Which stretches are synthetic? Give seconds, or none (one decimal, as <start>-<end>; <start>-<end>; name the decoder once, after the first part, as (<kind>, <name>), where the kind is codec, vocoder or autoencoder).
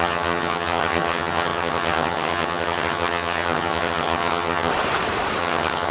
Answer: 0.0-4.7 (vocoder, HiFi-GAN); 5.4-5.9